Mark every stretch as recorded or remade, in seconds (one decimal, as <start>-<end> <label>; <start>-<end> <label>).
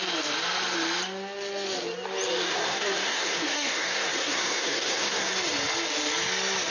0.0-2.5 recorded; 2.5-5.3 remade; 5.3-6.7 recorded